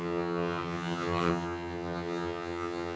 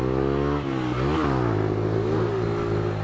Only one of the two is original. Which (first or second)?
second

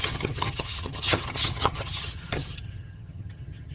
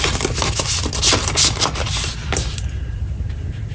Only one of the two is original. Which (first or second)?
second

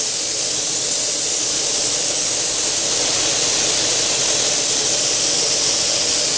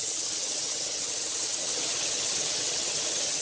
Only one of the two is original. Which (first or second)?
first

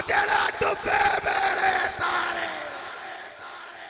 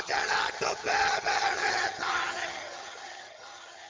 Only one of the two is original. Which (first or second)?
first